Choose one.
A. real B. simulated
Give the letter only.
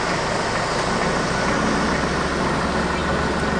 A